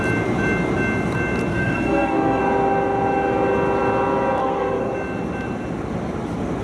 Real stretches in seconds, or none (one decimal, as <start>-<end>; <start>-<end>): 0.0-1.5; 2.4-4.4; 4.9-6.6